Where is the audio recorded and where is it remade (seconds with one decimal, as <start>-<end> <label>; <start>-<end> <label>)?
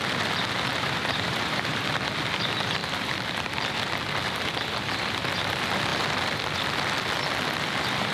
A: 0.0-0.7 recorded; 0.7-1.9 remade; 1.9-8.1 recorded